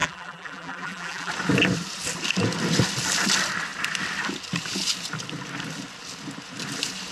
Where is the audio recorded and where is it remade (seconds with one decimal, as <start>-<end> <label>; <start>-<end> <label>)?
0.0-1.3 remade; 1.3-7.1 recorded